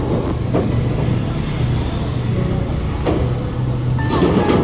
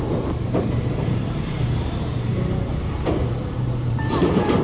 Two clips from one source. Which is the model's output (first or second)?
second